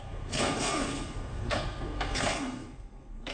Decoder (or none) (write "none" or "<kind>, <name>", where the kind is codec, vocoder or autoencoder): codec, SNAC